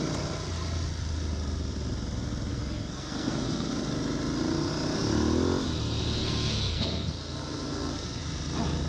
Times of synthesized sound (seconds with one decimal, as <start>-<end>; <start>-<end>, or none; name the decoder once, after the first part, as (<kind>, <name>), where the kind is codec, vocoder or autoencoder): 2.5-3.7 (codec, SNAC); 6.2-8.2